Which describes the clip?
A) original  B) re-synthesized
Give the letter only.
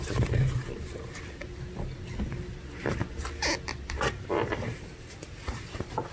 A